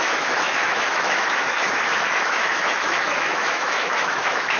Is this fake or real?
fake